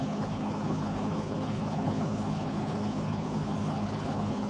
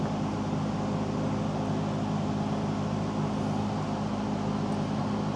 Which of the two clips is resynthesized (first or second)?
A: first